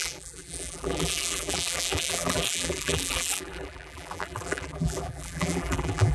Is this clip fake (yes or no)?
yes